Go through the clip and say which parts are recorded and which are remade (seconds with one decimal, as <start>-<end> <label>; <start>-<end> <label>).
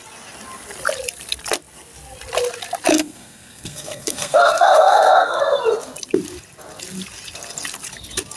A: 0.0-2.9 recorded; 2.9-5.4 remade; 5.4-8.4 recorded